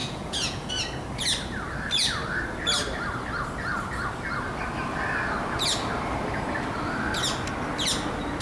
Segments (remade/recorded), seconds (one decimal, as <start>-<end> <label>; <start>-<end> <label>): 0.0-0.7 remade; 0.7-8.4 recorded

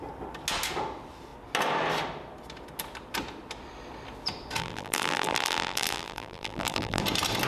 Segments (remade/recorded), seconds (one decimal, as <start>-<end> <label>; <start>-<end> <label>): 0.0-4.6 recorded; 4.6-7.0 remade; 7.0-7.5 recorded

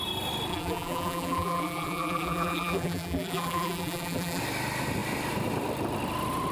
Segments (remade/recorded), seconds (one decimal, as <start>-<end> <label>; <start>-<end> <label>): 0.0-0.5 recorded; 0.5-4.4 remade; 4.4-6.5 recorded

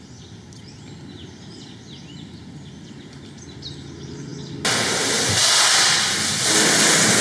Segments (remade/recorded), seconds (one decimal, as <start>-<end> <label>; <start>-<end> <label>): 0.0-7.2 recorded

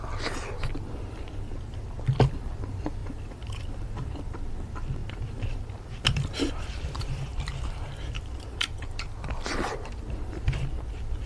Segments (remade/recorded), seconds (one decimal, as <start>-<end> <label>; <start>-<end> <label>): 0.0-3.0 recorded; 3.0-4.5 remade; 4.5-5.0 recorded; 5.0-9.0 remade; 9.0-11.3 recorded

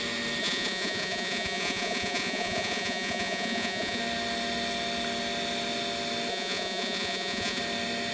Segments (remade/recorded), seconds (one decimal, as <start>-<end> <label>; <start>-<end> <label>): 0.0-0.4 recorded; 0.4-4.0 remade; 4.0-6.3 recorded; 6.3-7.6 remade; 7.6-8.1 recorded